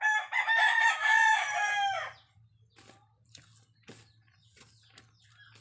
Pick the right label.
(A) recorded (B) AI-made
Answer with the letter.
A